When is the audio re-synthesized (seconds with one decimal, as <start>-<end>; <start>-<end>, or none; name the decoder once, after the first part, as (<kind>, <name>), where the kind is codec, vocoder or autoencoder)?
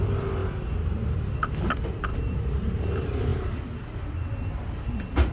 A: 0.4-1.6 (vocoder, BigVGAN v2); 2.1-2.8